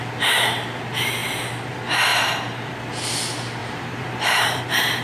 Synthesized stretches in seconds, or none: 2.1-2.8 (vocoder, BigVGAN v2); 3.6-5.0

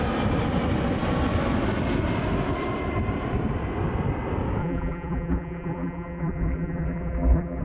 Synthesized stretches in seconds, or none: 4.6-7.6 (vocoder, BigVGAN v2)

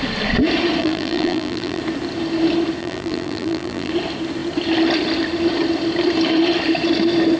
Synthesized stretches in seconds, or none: 0.8-1.8 (vocoder, BigVGAN v2); 2.8-3.9

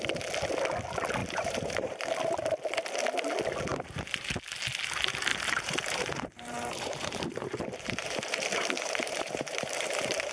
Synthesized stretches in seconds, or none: 1.2-2.1 (vocoder, BigVGAN v2); 3.7-4.3; 5.3-10.3